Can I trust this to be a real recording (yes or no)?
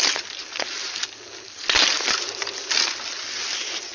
yes